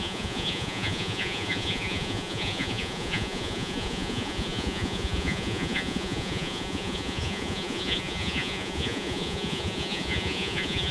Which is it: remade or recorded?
remade